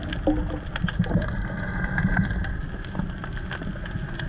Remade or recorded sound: recorded